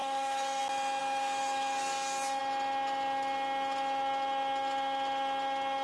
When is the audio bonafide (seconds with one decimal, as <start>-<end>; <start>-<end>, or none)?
0.6-1.0; 2.4-5.8

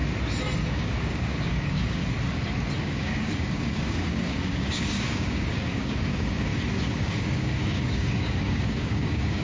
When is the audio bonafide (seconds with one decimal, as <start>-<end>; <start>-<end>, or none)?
0.0-0.7; 2.0-2.8; 6.5-7.0